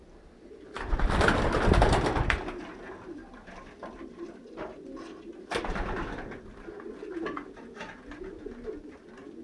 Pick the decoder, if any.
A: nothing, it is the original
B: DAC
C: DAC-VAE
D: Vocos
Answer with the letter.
A